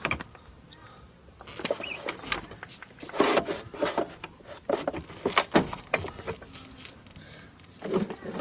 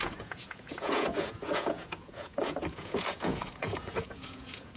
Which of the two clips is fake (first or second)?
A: second